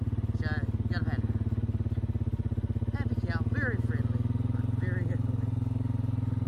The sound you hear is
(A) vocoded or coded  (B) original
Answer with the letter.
B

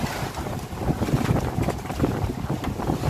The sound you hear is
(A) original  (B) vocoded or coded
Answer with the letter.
A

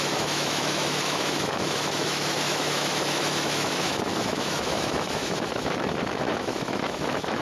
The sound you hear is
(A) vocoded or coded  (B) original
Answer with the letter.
A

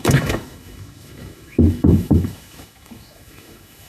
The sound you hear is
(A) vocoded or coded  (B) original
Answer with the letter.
A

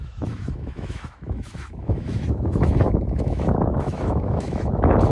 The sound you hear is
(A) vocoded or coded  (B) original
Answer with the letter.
A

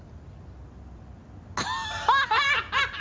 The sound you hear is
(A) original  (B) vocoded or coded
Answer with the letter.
A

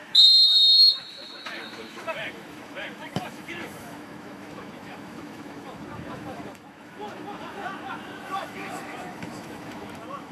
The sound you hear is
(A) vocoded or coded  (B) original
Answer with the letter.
A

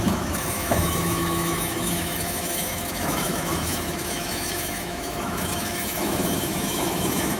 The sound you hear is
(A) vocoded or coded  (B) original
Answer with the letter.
A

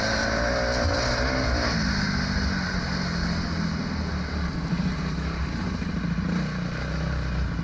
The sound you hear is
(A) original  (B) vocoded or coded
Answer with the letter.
A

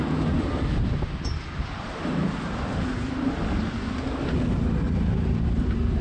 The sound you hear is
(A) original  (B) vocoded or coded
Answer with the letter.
A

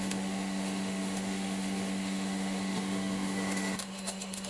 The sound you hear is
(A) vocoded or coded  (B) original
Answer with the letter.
A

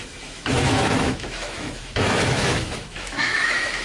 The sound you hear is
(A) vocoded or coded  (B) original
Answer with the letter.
A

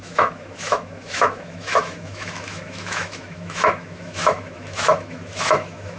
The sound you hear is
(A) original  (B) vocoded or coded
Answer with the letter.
B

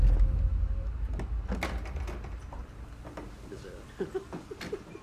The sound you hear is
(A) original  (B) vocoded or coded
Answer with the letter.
A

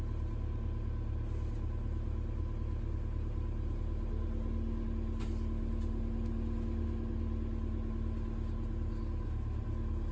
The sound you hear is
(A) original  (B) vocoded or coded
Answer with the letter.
A